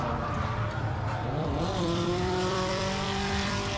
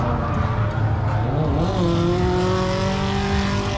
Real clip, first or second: second